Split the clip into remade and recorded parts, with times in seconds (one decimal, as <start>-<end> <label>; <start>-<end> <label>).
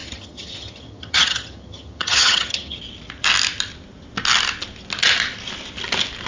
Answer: 0.0-2.8 remade; 2.8-6.3 recorded